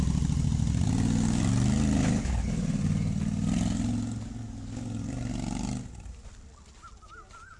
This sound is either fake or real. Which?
real